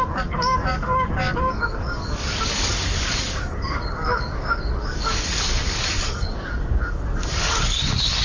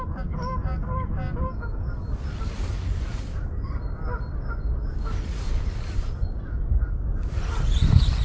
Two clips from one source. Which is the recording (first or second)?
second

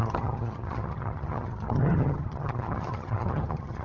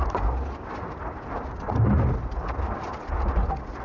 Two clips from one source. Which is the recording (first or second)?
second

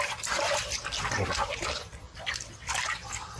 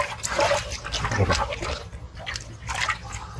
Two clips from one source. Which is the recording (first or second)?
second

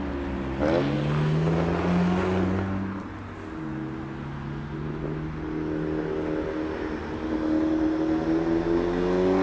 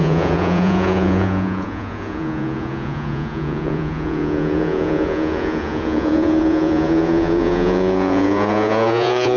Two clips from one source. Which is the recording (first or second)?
first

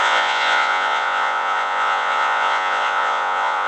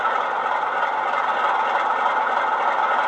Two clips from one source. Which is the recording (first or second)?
second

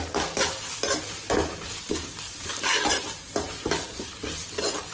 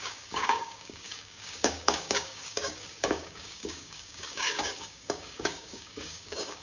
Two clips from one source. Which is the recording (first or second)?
first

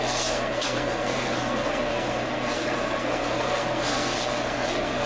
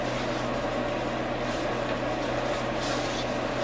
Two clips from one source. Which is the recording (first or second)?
second